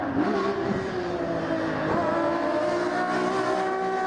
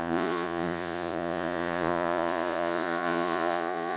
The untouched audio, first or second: first